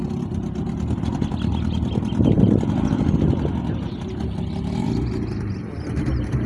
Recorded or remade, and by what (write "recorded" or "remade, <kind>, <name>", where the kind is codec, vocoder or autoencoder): recorded